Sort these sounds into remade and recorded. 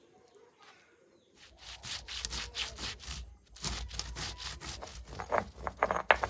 recorded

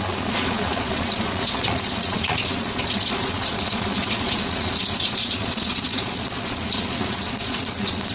remade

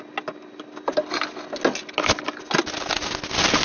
recorded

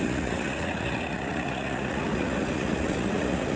remade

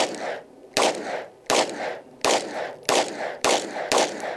recorded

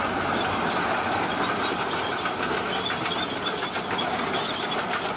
recorded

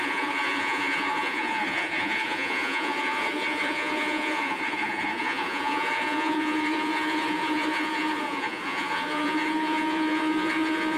remade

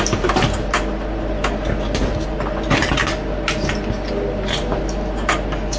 recorded